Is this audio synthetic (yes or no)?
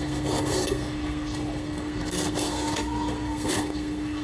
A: yes